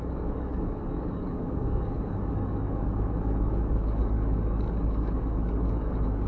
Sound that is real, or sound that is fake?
fake